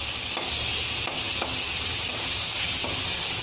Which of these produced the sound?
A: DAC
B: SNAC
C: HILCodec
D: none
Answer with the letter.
D